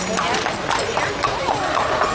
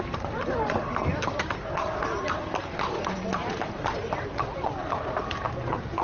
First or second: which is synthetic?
second